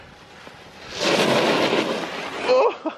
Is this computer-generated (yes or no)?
no